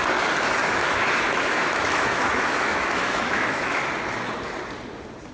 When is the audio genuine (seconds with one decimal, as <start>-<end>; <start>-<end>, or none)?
0.0-0.6; 3.8-5.3